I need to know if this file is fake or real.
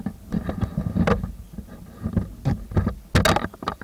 real